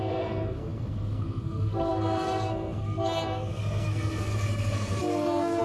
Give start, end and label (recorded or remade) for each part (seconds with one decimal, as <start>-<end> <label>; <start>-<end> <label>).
0.0-5.6 remade